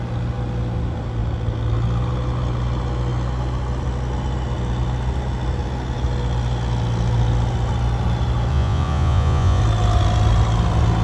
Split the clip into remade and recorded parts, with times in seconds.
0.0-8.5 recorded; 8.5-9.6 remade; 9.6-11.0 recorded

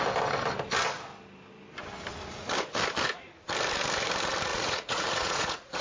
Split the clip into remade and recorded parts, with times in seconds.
0.0-4.5 recorded; 4.5-5.8 remade

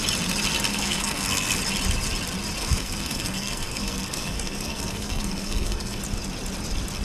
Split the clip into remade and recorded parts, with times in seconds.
0.0-0.7 recorded; 0.7-1.6 remade; 1.6-2.6 recorded; 2.6-6.0 remade; 6.0-7.0 recorded

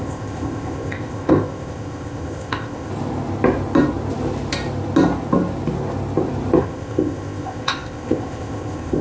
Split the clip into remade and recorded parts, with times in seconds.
0.0-2.9 remade; 2.9-6.6 recorded; 6.6-9.0 remade

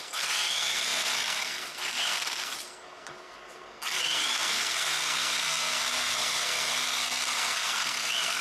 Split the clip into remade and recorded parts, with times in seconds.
0.0-8.4 remade